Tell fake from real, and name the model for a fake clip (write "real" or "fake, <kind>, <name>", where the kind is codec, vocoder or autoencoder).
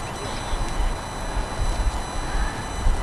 real